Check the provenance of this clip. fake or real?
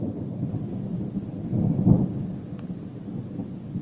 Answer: real